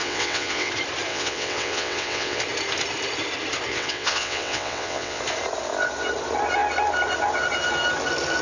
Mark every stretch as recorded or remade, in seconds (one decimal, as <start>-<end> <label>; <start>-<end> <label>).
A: 0.0-0.7 remade; 0.7-1.1 recorded; 1.1-2.4 remade; 2.4-3.7 recorded; 3.7-5.2 remade; 5.2-8.4 recorded